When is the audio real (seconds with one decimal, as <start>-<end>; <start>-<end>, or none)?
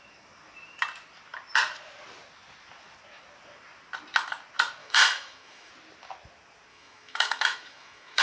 0.0-4.8; 5.7-6.7